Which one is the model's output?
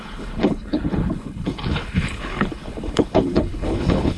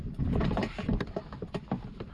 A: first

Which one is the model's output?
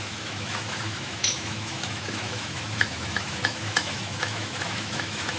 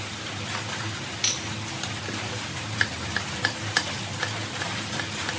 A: first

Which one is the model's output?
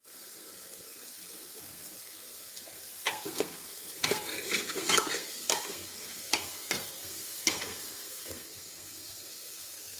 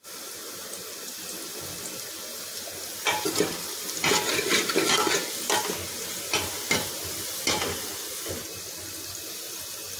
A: first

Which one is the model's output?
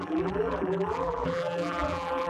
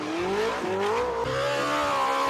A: first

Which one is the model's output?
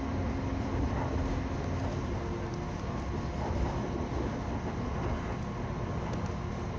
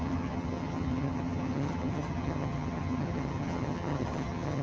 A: second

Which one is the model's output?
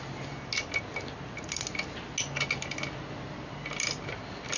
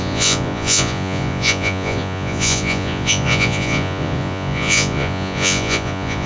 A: second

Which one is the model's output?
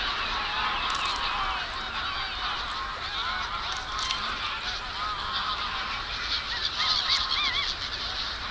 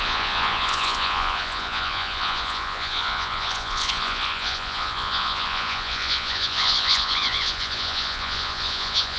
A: second